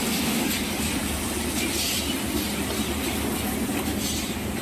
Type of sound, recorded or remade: recorded